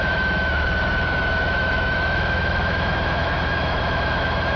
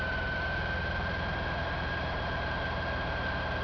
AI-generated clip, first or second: first